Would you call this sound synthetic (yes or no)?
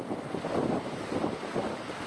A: no